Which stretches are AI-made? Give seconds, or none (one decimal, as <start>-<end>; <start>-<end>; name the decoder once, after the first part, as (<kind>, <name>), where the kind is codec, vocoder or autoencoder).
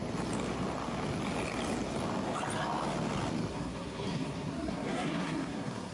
3.5-5.9 (codec, SNAC)